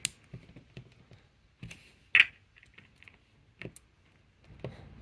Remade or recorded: recorded